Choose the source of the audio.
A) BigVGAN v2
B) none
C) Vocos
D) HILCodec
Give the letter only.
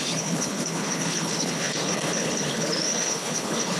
D